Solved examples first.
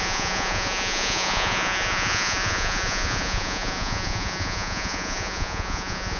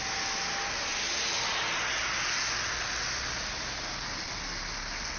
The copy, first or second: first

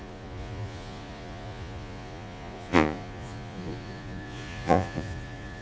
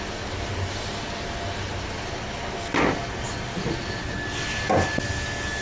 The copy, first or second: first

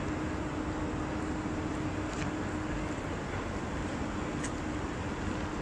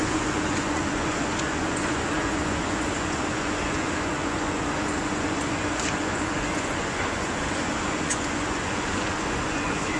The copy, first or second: second